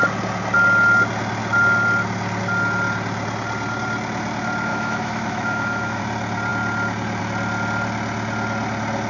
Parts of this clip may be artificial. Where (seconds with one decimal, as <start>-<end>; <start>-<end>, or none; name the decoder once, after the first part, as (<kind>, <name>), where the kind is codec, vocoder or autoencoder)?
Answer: 4.7-6.0 (autoencoder, DAC-VAE)